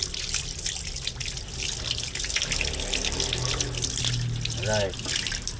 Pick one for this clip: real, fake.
real